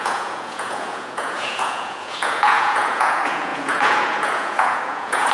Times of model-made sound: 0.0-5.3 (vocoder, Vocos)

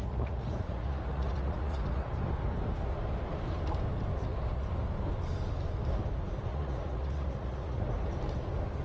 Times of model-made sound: 0.0-2.1 (vocoder, Vocos); 6.5-7.8

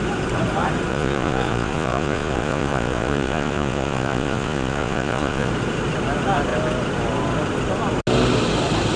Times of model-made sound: 0.9-5.5 (vocoder, Vocos)

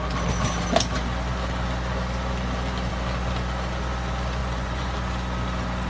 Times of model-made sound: 4.4-4.9 (vocoder, Vocos)

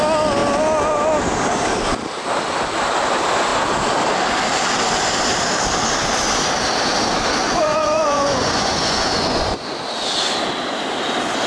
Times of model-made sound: 7.4-9.8 (vocoder, Vocos)

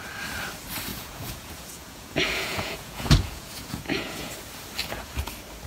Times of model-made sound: 0.9-4.3 (vocoder, Vocos); 4.8-5.3